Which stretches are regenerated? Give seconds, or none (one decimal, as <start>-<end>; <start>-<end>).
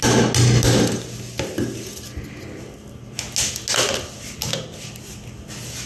none